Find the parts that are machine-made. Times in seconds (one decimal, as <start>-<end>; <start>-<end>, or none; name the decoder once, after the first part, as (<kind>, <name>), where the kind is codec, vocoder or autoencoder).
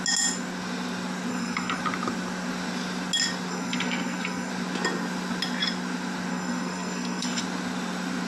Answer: 1.3-1.8 (codec, SNAC); 3.5-4.5; 6.3-7.4